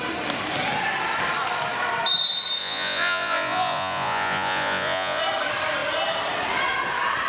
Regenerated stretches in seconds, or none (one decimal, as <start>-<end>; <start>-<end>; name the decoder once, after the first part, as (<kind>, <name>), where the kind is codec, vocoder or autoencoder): 2.6-5.2 (vocoder, Vocos)